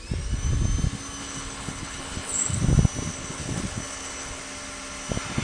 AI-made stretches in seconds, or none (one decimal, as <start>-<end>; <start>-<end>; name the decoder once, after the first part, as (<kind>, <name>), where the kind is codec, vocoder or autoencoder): 1.2-2.6 (codec, HILCodec); 3.1-4.4